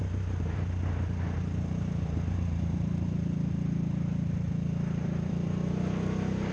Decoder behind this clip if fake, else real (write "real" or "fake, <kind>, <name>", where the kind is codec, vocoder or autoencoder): fake, vocoder, BigVGAN v2